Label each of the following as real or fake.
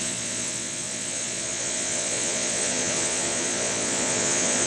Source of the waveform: fake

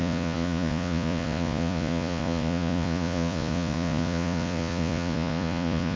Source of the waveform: fake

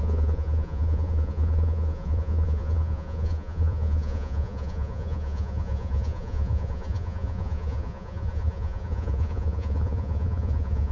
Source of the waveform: fake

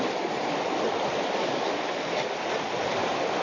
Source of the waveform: real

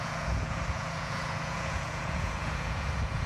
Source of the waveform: fake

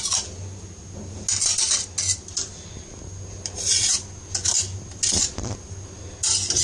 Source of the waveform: real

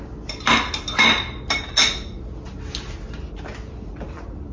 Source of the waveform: real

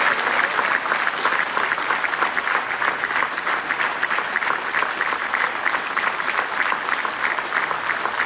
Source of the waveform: real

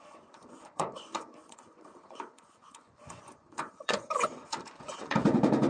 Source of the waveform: fake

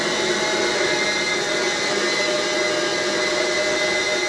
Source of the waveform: real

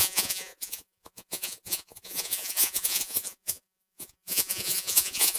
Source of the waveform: fake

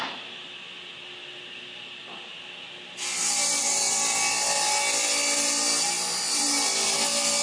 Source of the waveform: real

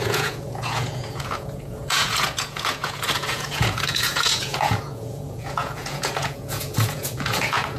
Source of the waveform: fake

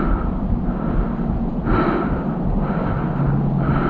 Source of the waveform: real